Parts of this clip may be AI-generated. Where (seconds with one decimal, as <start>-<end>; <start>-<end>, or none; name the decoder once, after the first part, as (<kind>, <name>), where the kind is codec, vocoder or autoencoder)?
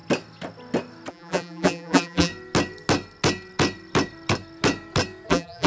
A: 1.1-2.3 (vocoder, BigVGAN v2); 5.3-5.7